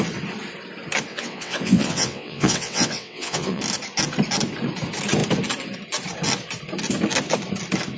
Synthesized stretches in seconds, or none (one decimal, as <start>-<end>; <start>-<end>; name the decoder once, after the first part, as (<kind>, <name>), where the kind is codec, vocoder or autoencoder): 1.1-3.6 (vocoder, WaveNeXt)